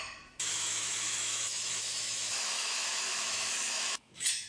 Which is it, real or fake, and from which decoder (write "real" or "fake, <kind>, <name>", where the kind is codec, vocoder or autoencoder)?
fake, autoencoder, DAC-VAE